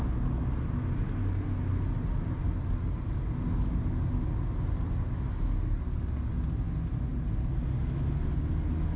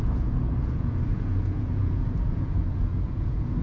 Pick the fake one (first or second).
second